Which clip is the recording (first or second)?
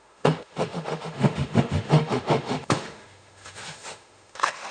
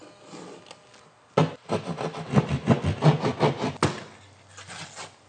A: second